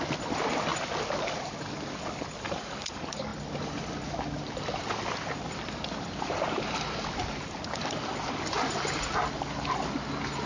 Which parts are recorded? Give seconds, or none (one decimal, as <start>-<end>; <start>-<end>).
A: 0.0-10.5